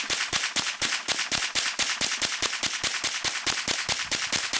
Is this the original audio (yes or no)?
yes